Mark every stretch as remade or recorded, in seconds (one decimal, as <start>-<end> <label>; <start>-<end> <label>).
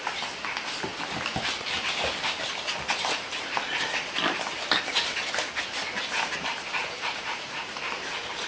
0.0-6.8 recorded; 6.8-7.8 remade; 7.8-8.5 recorded